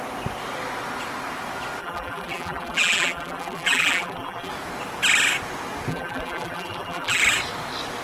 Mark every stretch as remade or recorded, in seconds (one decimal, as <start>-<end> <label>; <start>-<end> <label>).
0.0-1.8 recorded; 1.8-4.5 remade; 4.5-5.9 recorded; 5.9-7.2 remade; 7.2-8.0 recorded

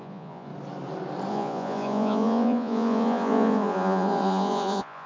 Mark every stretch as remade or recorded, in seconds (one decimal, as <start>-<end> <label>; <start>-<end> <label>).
0.0-0.5 remade; 0.5-1.3 recorded; 1.3-5.1 remade

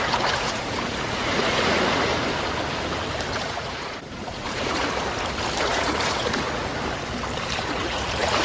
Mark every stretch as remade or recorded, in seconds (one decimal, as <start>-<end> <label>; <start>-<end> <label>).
0.0-2.1 remade; 2.1-3.4 recorded; 3.4-4.8 remade; 4.8-5.6 recorded; 5.6-6.7 remade; 6.7-7.6 recorded; 7.6-8.4 remade

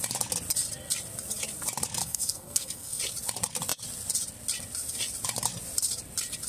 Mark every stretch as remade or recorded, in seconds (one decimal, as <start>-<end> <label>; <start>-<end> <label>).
0.0-2.0 recorded; 2.0-3.0 remade; 3.0-6.5 recorded

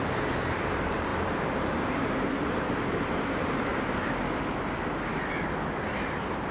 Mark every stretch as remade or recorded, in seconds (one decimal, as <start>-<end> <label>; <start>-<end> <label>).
0.0-1.1 remade; 1.1-1.9 recorded; 1.9-3.7 remade; 3.7-5.7 recorded; 5.7-6.5 remade

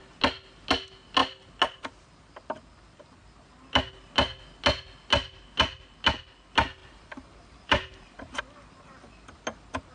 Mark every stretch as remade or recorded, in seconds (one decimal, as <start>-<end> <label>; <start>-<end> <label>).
0.0-6.8 recorded; 6.8-8.4 remade; 8.4-9.9 recorded

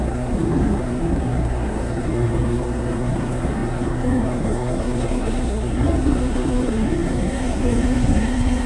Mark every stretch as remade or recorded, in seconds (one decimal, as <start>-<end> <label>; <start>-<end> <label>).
0.0-8.7 remade